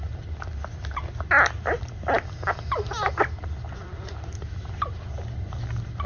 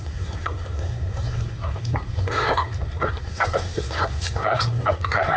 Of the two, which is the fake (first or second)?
second